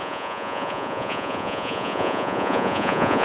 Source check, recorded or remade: remade